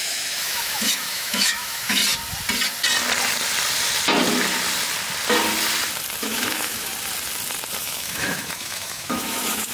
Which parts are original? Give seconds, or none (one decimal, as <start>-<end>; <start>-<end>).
2.0-6.2; 6.9-7.8